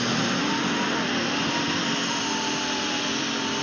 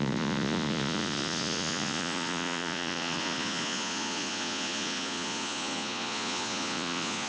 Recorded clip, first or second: first